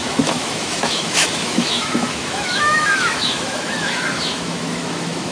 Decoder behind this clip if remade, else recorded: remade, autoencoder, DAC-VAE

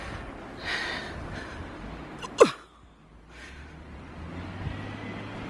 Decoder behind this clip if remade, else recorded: recorded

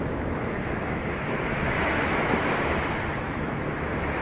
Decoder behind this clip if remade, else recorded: remade, autoencoder, DAC-VAE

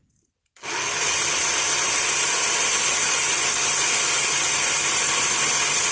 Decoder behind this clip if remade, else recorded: recorded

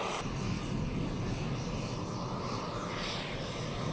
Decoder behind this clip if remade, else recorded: recorded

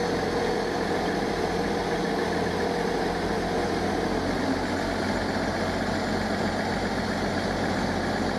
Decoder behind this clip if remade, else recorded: recorded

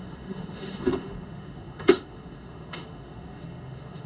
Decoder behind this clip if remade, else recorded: remade, autoencoder, DAC-VAE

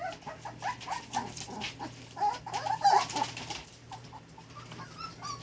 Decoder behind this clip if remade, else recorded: recorded